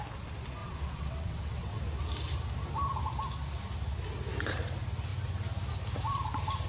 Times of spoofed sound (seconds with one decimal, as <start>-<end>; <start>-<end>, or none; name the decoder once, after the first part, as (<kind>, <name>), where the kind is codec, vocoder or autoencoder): 0.6-1.8 (vocoder, WaveNeXt)